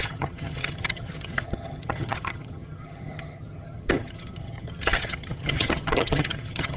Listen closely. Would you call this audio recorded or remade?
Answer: remade